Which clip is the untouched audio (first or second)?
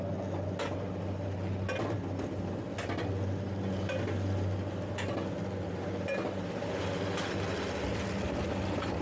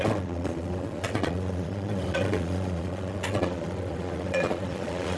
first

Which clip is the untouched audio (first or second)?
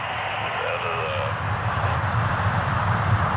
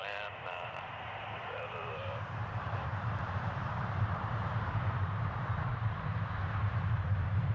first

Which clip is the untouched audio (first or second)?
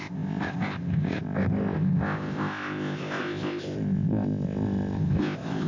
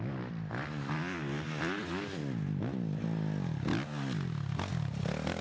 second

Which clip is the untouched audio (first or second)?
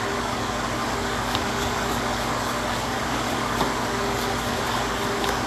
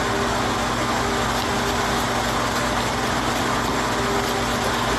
second